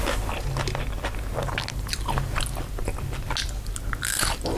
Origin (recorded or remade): recorded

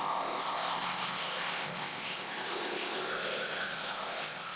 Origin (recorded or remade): remade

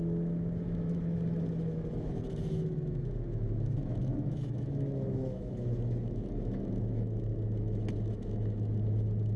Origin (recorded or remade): remade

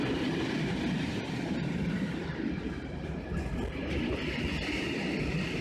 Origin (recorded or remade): recorded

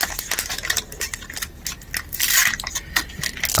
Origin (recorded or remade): recorded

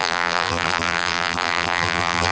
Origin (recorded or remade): remade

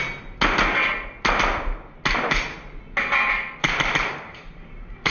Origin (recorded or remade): recorded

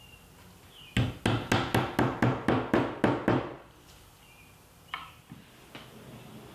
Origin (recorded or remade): recorded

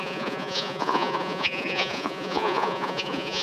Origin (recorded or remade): remade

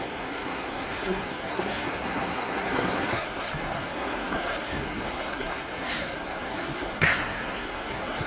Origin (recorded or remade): remade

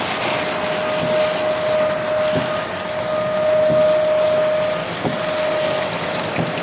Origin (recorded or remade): recorded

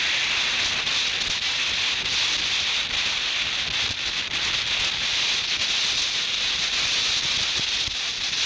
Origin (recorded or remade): recorded